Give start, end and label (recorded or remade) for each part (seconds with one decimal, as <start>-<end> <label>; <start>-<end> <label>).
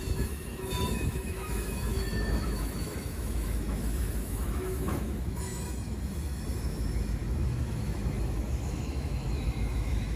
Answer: 0.0-10.2 remade